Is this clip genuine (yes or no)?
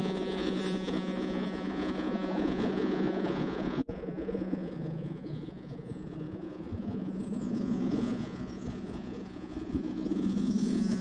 no